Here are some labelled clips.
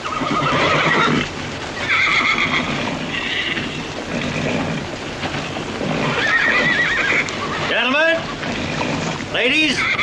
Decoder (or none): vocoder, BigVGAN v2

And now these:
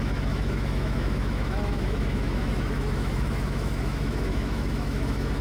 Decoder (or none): autoencoder, DAC-VAE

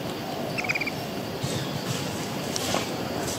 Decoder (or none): none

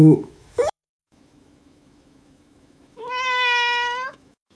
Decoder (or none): autoencoder, DAC-VAE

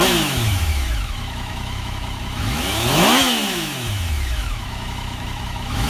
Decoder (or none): autoencoder, DAC-VAE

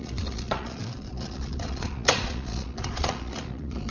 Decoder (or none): vocoder, Vocos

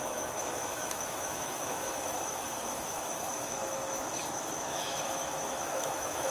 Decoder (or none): autoencoder, DAC-VAE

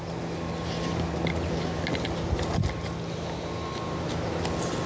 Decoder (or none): none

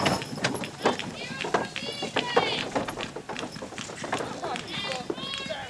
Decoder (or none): none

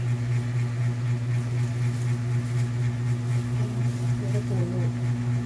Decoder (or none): none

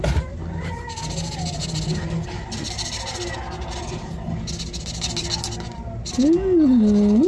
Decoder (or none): none